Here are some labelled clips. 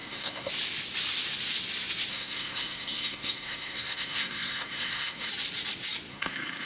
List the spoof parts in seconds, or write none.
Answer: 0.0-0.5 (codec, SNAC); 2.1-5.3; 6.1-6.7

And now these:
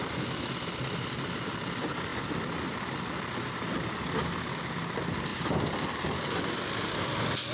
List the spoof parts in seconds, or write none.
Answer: none

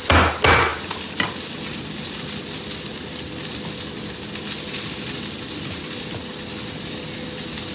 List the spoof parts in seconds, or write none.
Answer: none